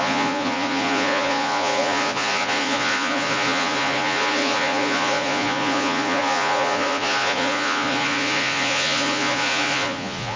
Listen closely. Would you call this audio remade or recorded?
remade